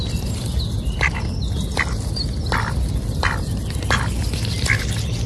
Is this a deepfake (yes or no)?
no